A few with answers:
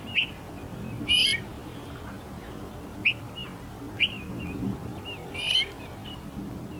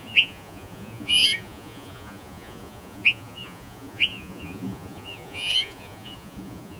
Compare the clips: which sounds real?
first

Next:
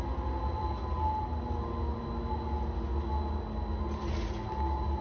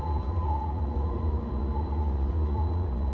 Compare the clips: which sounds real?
first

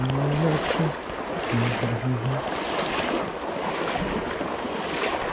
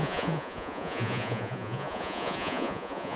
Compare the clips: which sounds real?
first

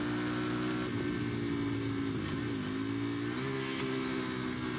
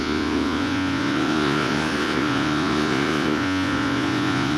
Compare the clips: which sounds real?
first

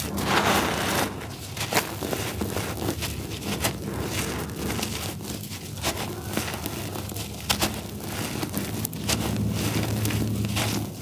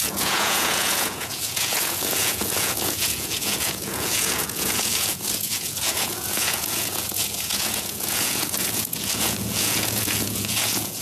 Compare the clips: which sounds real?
first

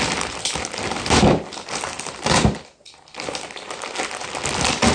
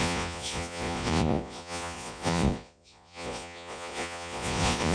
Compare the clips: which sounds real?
first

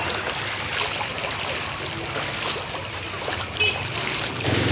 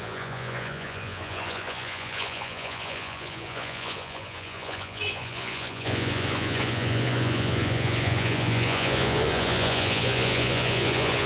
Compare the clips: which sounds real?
first